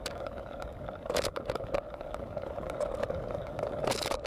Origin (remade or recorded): remade